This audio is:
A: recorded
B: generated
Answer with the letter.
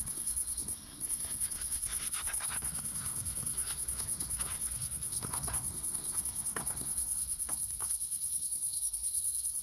B